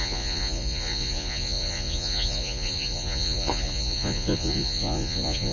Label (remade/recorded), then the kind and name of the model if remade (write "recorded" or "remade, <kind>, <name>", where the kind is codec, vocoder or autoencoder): remade, vocoder, Vocos